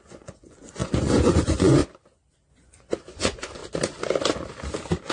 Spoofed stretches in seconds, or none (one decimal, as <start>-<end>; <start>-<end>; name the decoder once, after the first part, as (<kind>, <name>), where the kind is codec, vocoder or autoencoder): 0.0-1.8 (vocoder, Vocos); 2.5-3.6